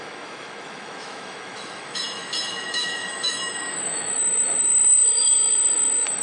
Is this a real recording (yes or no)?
no